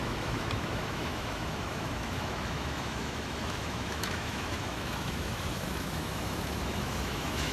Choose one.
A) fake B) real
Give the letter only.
A